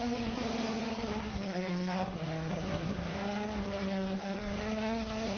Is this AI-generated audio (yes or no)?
yes